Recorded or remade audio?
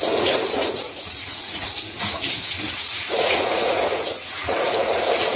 remade